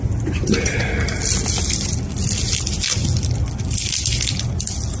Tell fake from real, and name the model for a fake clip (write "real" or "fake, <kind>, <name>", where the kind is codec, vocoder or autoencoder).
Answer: real